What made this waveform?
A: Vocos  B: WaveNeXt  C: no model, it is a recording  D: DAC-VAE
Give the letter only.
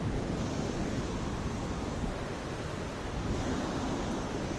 C